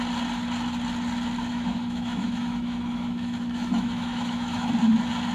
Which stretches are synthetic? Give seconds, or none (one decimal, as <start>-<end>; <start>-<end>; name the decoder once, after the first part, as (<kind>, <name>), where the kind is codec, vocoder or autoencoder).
1.5-4.7 (autoencoder, DAC-VAE)